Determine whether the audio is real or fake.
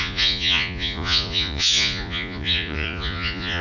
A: fake